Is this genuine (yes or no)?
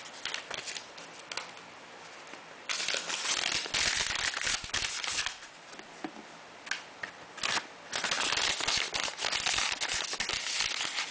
yes